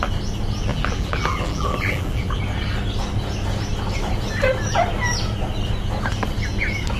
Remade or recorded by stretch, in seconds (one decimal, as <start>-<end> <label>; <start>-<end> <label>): 0.0-0.7 recorded; 0.7-2.4 remade; 2.4-7.0 recorded